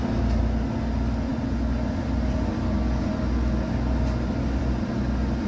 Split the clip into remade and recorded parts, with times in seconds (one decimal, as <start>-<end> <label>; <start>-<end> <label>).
0.0-5.5 recorded